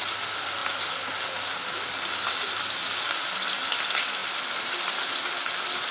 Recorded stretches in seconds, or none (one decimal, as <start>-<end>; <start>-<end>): 0.0-5.9